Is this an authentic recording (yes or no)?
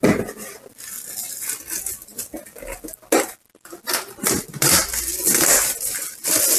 yes